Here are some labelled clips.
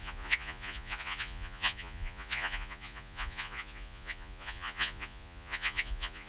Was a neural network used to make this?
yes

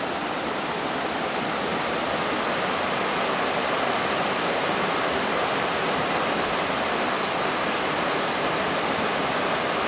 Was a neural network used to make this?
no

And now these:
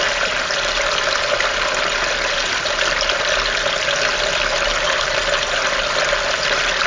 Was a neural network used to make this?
no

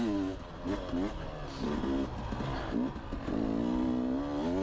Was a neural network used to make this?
no